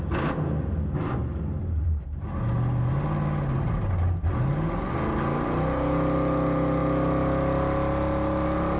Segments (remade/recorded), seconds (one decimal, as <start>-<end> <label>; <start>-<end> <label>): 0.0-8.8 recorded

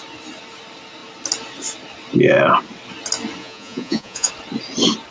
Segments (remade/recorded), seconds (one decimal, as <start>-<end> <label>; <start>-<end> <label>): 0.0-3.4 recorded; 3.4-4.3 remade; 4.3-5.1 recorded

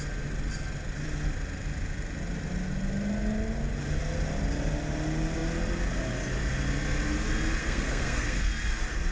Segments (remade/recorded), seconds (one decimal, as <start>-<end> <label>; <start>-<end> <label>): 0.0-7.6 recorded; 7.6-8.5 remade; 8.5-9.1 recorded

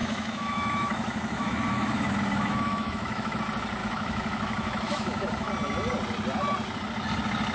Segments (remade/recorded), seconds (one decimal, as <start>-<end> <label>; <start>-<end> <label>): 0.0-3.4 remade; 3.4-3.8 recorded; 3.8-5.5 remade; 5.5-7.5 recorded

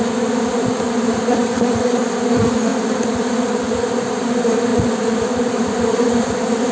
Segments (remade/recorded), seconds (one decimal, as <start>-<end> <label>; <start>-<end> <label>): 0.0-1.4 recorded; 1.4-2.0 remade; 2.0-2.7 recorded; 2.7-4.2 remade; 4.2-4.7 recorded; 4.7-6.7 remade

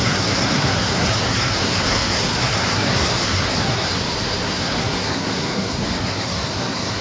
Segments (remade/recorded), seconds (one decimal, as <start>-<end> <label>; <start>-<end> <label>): 0.0-7.0 remade

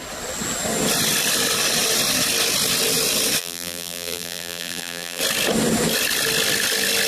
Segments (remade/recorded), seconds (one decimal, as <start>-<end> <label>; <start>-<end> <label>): 0.0-3.4 recorded; 3.4-5.2 remade; 5.2-7.1 recorded

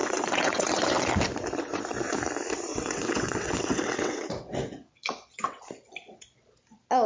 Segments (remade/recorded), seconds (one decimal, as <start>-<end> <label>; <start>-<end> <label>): 0.0-1.1 remade; 1.1-2.7 recorded; 2.7-5.6 remade; 5.6-7.1 recorded